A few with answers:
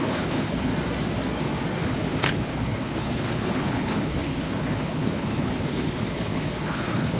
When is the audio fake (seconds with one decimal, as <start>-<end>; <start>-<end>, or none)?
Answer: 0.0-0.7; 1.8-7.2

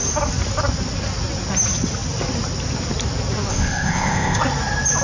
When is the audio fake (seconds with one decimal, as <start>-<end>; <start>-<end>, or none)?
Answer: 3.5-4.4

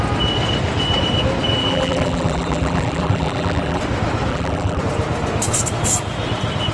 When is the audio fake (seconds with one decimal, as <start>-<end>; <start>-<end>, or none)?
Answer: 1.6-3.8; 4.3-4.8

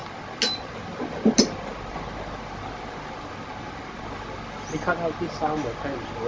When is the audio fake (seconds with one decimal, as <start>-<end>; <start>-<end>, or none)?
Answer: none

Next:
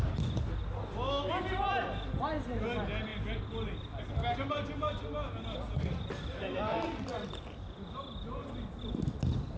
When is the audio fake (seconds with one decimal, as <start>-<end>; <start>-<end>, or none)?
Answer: none